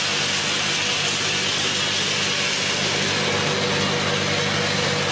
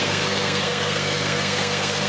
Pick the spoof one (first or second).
second